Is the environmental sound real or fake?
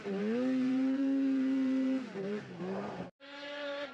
fake